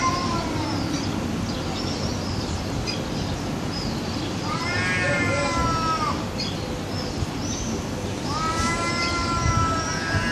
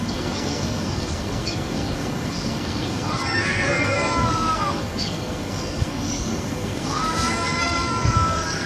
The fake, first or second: second